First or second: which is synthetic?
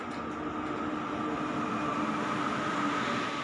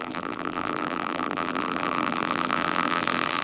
second